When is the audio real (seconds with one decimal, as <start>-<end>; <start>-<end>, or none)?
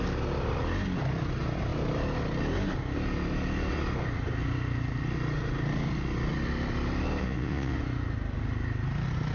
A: 0.0-7.2; 7.8-9.3